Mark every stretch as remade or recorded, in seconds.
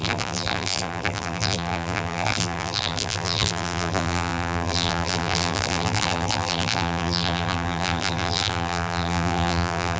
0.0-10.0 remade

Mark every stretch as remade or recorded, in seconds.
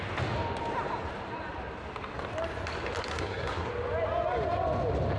0.0-3.0 recorded; 3.0-3.7 remade; 3.7-5.2 recorded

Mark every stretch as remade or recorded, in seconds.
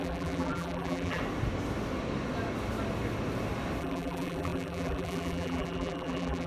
0.0-1.2 remade; 1.2-3.8 recorded; 3.8-6.5 remade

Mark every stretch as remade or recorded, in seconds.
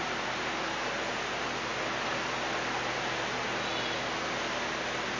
0.0-1.7 remade; 1.7-4.8 recorded; 4.8-5.2 remade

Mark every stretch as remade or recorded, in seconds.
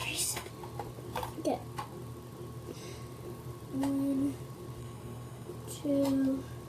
0.0-0.5 remade; 0.5-4.8 recorded; 4.8-5.5 remade; 5.5-6.7 recorded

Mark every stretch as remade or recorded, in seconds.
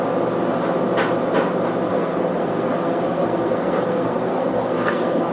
0.0-1.9 recorded; 1.9-5.3 remade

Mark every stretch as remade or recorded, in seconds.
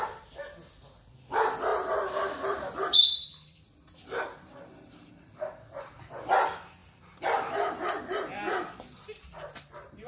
0.0-1.7 recorded; 1.7-5.8 remade; 5.8-10.1 recorded